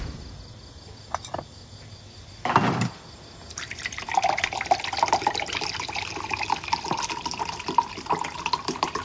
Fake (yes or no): no